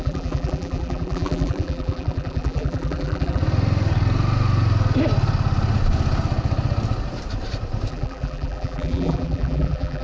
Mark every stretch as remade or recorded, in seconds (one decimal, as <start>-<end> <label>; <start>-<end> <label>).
0.0-3.4 remade; 3.4-7.9 recorded; 7.9-10.0 remade